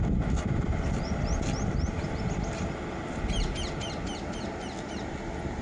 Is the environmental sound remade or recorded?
recorded